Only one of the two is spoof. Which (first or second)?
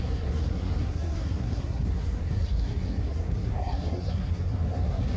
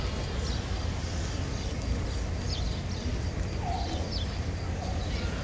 first